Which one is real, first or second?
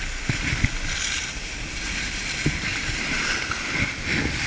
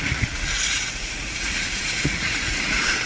first